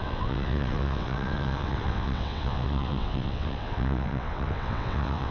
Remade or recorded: remade